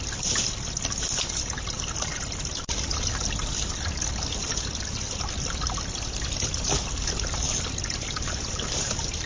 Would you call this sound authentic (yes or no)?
yes